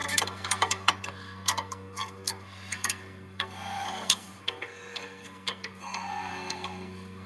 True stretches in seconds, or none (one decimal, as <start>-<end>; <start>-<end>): none